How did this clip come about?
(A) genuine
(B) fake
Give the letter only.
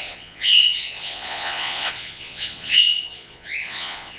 B